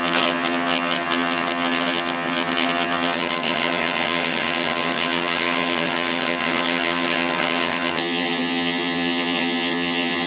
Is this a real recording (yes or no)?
no